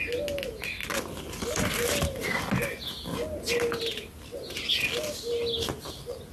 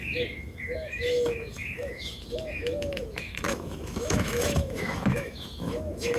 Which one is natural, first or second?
first